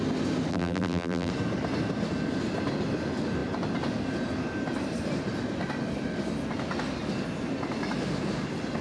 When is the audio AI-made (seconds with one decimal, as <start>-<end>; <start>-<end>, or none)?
0.5-1.3